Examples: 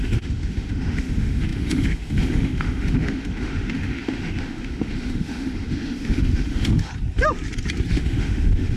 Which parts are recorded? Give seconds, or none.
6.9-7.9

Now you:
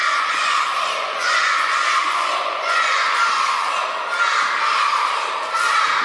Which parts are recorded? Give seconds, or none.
3.6-6.0